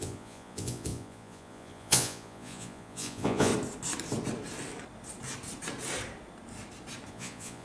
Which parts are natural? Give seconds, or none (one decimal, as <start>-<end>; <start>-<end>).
3.5-7.1